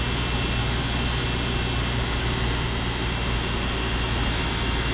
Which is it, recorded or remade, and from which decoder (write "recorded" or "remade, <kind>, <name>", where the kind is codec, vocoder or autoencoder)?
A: recorded